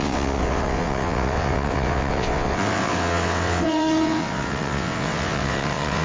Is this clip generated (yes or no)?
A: yes